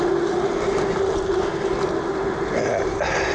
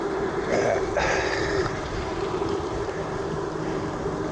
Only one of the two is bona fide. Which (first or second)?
first